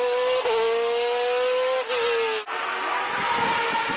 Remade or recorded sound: recorded